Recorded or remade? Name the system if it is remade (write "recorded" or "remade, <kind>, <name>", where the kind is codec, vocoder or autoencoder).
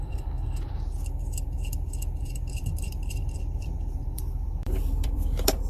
remade, vocoder, BigVGAN v2